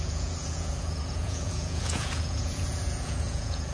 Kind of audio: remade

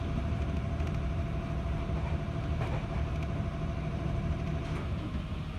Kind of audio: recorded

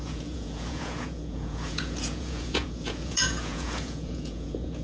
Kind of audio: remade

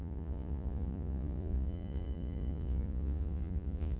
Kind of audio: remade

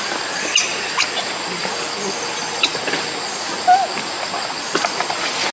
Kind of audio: recorded